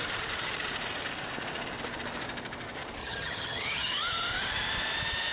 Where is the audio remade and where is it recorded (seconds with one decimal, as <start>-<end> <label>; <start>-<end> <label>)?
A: 0.0-3.0 recorded; 3.0-3.9 remade; 3.9-5.3 recorded